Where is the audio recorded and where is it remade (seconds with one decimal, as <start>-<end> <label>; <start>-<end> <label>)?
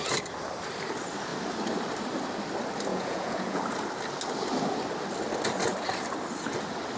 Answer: 0.0-2.9 recorded; 2.9-3.6 remade; 3.6-7.0 recorded